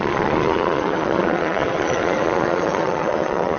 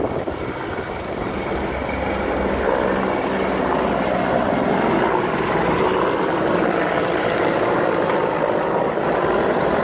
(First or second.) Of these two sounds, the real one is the second